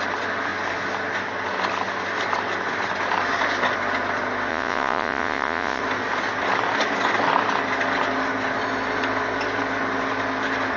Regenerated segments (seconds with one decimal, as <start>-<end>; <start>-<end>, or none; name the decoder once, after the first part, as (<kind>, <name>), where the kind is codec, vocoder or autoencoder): 4.5-5.8 (vocoder, Vocos)